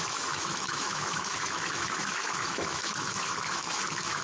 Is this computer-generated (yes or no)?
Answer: yes